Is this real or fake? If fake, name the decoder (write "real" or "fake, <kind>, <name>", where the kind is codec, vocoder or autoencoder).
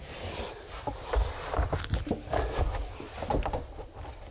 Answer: fake, vocoder, BigVGAN v2